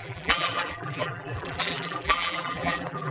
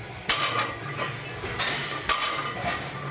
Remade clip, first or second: first